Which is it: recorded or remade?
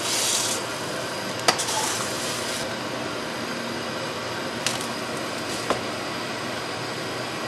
recorded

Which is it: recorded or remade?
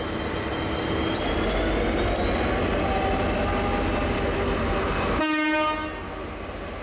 recorded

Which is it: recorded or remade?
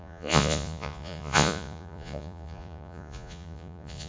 remade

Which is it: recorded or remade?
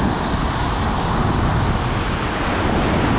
recorded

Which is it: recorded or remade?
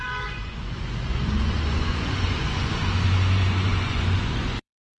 remade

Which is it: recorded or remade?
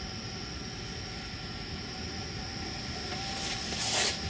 recorded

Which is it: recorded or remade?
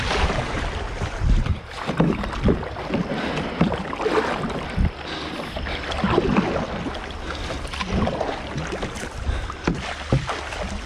recorded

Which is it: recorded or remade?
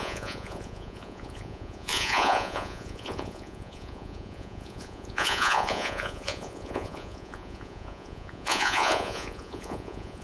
remade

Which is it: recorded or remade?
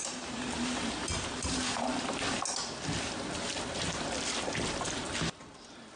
recorded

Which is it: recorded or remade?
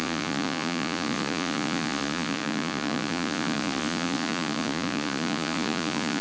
remade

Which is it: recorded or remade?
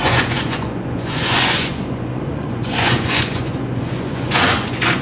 remade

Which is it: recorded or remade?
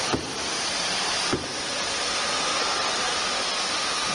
recorded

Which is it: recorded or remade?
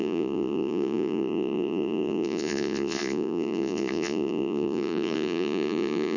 remade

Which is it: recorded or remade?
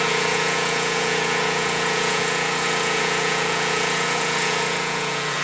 remade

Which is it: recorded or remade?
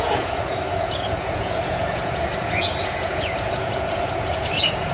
remade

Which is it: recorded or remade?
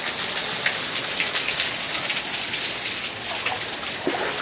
recorded